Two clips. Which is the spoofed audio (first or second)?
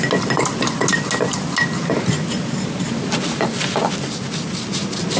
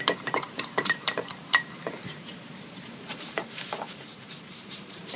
second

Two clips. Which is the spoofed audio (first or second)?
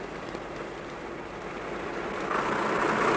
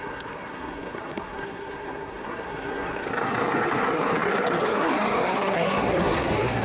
second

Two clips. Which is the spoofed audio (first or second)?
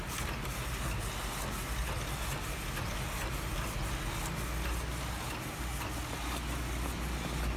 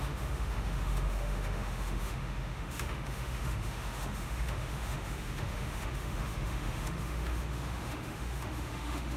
second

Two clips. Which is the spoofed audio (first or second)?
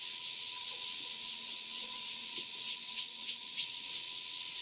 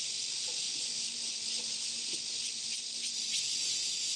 first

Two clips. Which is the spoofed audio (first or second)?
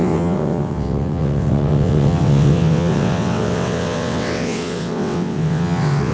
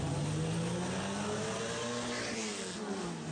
first